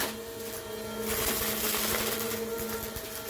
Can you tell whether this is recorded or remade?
recorded